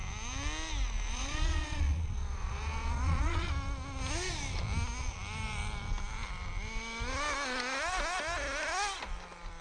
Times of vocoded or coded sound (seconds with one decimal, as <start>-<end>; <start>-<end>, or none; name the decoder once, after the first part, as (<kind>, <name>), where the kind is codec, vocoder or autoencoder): 1.1-3.5 (vocoder, Vocos)